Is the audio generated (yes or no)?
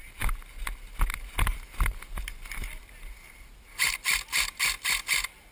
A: no